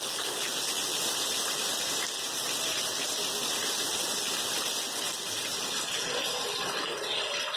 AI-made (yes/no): no